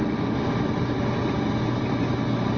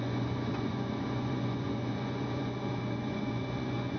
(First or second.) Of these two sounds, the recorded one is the first